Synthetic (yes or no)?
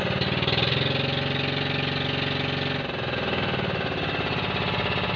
no